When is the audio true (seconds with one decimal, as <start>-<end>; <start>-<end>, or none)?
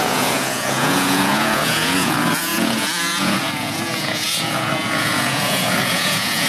none